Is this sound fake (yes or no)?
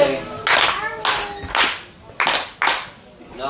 no